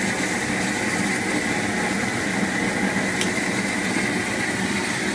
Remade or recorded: recorded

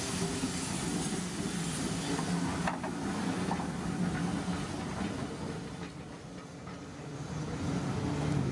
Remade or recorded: recorded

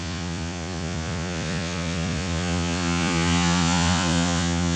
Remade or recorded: remade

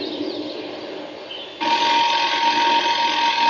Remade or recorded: recorded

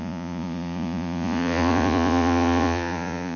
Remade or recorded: remade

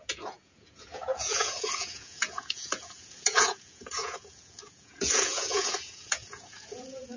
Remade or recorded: remade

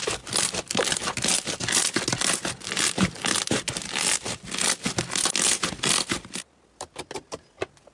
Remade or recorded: recorded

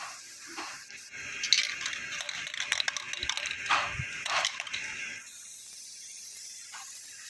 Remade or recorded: recorded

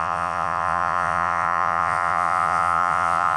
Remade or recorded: remade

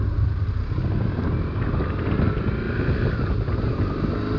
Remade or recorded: recorded